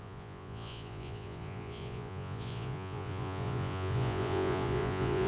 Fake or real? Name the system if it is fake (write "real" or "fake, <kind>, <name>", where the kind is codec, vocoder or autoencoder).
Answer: fake, vocoder, Vocos